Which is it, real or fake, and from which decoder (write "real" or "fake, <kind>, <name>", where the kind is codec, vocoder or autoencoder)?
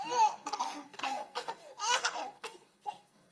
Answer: fake, codec, SNAC